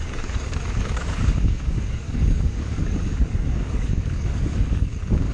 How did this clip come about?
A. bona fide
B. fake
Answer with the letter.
B